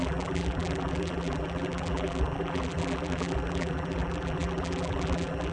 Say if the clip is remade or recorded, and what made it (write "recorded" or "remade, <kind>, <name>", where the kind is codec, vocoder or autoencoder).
remade, vocoder, BigVGAN v2